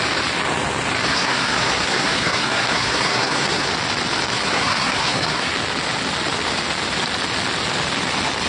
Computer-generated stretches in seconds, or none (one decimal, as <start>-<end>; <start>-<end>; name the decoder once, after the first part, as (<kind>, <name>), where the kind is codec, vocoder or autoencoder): 1.1-3.7 (codec, SNAC); 4.3-5.5